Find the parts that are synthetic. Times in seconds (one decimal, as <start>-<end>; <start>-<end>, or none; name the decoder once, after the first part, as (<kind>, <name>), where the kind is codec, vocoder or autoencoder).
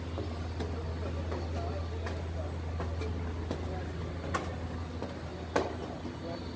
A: none